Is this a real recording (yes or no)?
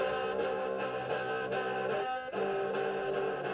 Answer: yes